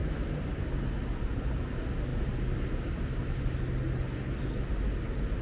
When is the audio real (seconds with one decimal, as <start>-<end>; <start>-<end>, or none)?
0.0-5.4